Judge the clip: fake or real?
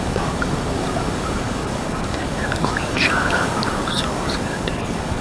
fake